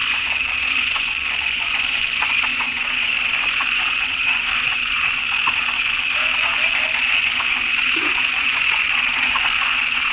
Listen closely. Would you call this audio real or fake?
fake